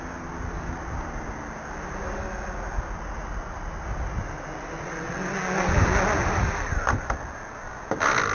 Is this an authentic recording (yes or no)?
yes